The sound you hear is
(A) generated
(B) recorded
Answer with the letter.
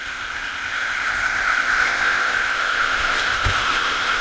A